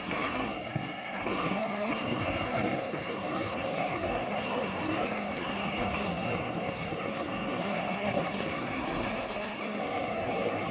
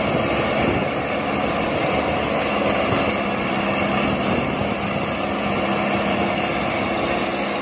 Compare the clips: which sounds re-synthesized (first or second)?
first